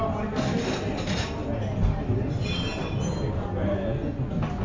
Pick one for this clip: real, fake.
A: real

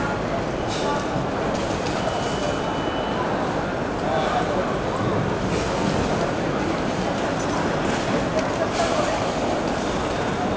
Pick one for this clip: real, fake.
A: real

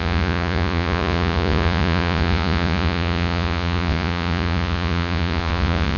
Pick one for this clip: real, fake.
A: fake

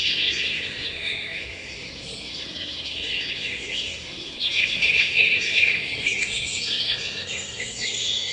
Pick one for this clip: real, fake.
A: fake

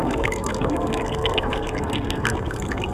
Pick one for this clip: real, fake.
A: fake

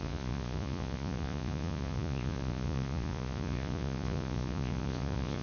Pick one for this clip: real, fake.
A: fake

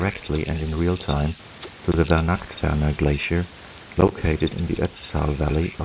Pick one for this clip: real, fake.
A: real